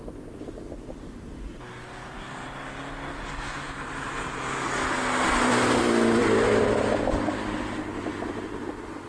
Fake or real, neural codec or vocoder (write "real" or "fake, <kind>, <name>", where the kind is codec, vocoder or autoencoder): real